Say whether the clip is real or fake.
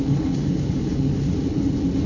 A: fake